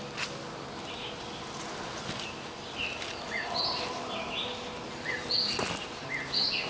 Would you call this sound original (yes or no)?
yes